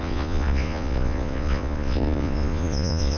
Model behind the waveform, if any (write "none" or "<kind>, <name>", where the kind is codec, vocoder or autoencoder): vocoder, Vocos